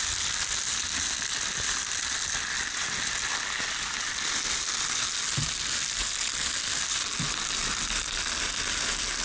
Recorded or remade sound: recorded